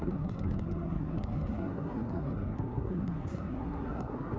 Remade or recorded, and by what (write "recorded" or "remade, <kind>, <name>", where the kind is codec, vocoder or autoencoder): remade, codec, SNAC